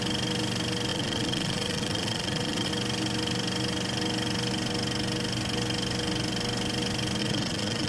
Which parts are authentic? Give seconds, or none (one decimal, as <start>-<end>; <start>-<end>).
0.0-0.9; 2.7-7.2